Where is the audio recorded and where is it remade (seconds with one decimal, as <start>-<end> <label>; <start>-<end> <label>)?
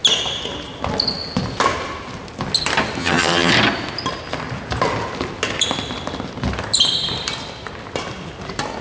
0.0-3.0 recorded; 3.0-3.5 remade; 3.5-8.8 recorded